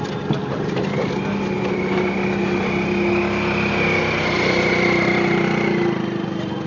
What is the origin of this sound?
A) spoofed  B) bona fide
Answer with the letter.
B